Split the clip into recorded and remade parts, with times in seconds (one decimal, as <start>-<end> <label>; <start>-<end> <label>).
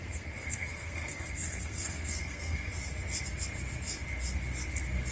0.0-2.7 remade; 2.7-5.1 recorded